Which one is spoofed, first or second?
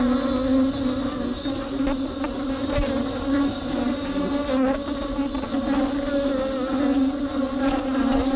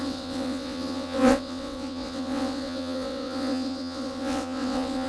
second